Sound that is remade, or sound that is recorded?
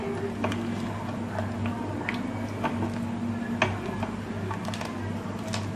recorded